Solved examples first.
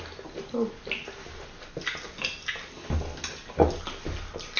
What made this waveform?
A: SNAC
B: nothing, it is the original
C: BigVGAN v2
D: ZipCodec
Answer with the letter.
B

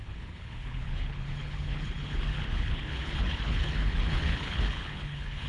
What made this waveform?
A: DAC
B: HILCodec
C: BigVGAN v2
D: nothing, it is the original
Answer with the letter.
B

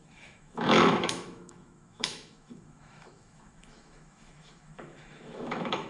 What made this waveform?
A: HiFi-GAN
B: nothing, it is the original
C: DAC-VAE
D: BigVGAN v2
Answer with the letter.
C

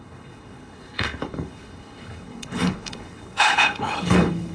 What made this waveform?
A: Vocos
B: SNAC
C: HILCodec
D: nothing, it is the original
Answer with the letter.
C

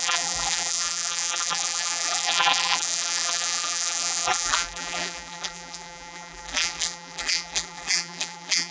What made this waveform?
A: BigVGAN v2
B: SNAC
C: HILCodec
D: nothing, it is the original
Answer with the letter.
A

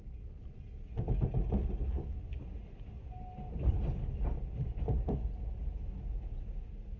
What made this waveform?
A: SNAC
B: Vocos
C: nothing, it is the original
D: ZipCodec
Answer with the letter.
C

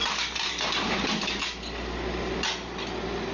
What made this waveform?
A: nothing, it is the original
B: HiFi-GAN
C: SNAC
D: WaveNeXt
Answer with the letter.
A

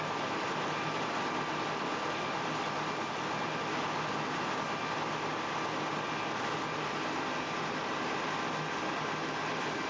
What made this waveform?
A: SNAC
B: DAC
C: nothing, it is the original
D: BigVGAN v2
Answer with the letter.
C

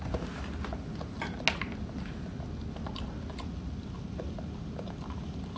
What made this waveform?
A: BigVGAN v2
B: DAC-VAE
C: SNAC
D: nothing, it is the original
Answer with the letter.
D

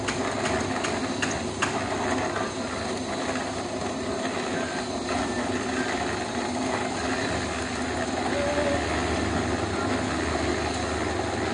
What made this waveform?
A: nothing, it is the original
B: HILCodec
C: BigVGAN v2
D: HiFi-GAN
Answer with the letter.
A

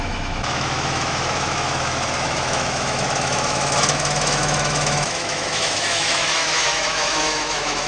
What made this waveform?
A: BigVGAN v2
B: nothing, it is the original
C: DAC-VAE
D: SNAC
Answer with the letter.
C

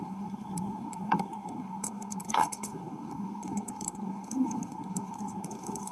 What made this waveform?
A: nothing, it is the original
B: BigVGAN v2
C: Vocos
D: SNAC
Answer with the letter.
D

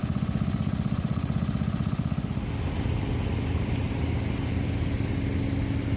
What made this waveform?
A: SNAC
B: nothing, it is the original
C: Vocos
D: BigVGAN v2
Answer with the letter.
B